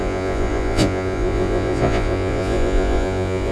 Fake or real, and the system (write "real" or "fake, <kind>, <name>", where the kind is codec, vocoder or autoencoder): fake, vocoder, Vocos